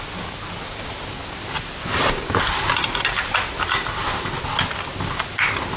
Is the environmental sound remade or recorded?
recorded